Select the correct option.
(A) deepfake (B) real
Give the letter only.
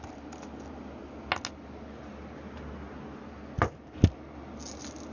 B